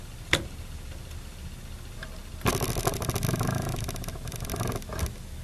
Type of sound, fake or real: real